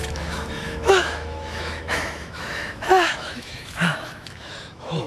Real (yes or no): no